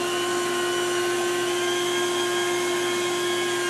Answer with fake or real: real